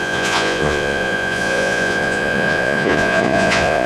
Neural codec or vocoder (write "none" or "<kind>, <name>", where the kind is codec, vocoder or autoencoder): vocoder, Vocos